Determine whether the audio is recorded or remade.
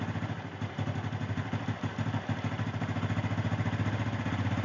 recorded